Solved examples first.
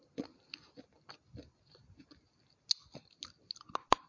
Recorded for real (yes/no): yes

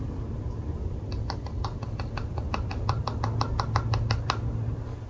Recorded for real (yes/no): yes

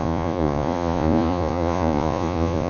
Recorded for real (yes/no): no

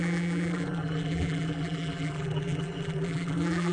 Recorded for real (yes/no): no